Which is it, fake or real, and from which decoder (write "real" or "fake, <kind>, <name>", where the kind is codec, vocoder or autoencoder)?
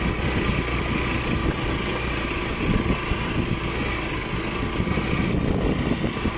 real